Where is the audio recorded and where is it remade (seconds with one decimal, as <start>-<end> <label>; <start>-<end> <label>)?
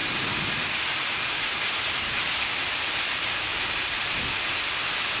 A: 0.0-3.5 recorded; 3.5-4.3 remade; 4.3-5.2 recorded